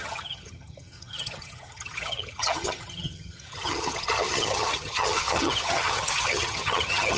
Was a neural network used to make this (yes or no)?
yes